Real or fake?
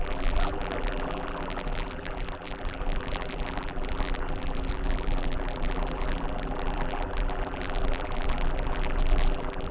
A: fake